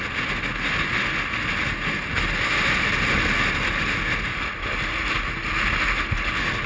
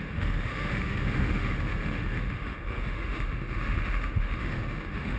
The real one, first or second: first